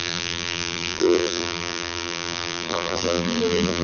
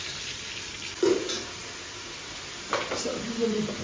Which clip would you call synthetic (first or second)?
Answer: first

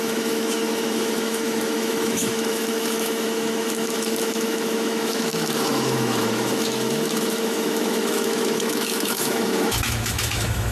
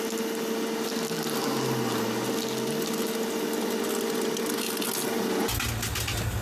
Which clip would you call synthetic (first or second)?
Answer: first